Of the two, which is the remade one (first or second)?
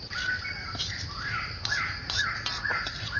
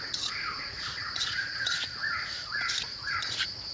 second